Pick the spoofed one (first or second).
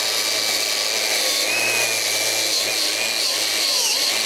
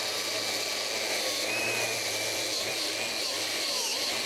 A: second